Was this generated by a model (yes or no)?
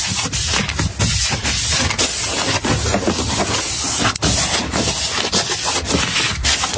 no